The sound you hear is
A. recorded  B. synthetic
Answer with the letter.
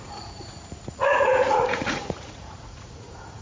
B